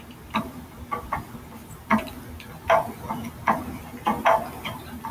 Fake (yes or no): no